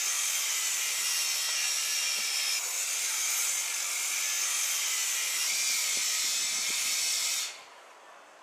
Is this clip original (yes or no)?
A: yes